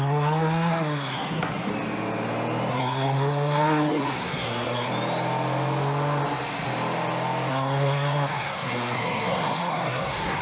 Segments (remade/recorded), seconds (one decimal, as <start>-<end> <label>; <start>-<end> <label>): 0.0-1.7 remade; 1.7-2.7 recorded; 2.7-4.9 remade; 4.9-7.5 recorded; 7.5-10.4 remade

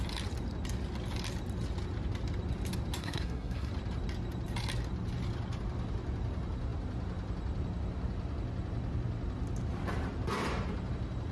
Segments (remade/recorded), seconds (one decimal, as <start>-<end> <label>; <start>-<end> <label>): 0.0-3.0 recorded; 3.0-3.7 remade; 3.7-11.3 recorded